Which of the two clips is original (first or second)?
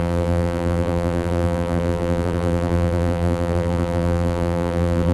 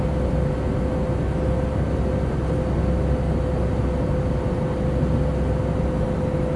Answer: second